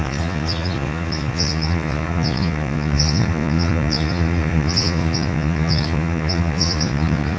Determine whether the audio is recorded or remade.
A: remade